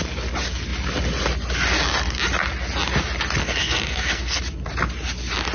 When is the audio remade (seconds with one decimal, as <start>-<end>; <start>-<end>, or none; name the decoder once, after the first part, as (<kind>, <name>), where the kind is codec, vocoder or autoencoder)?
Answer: 3.4-4.4 (codec, SNAC)